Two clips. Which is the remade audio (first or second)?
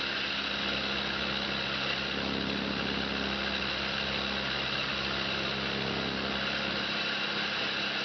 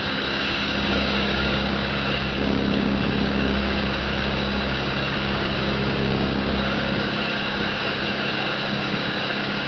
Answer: second